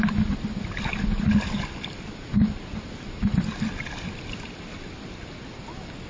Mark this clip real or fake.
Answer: real